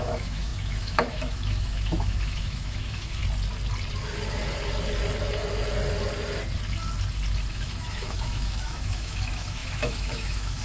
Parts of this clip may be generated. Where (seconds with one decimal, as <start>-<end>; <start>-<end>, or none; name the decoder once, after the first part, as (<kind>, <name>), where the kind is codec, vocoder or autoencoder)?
0.0-3.2 (autoencoder, DAC-VAE); 7.5-10.6